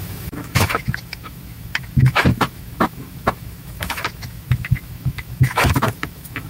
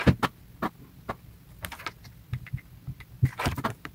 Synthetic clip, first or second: first